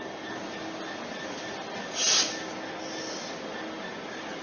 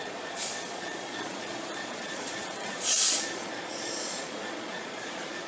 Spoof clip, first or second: second